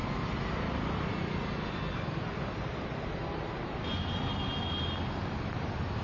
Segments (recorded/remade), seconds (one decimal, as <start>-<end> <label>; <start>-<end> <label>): 0.0-6.0 recorded